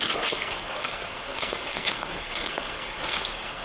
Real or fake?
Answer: fake